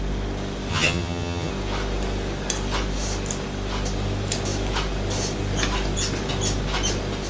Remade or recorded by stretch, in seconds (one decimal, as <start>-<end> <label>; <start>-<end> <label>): 0.0-0.7 recorded; 0.7-1.5 remade; 1.5-7.3 recorded